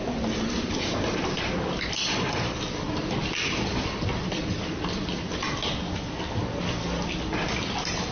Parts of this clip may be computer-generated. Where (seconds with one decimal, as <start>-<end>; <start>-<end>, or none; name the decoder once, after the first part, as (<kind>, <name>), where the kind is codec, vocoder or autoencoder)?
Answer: 0.0-4.9 (vocoder, BigVGAN v2)